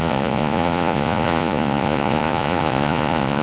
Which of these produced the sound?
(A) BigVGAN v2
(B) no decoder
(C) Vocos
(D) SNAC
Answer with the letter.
C